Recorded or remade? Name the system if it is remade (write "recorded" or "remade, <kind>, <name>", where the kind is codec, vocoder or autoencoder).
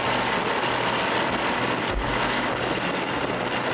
recorded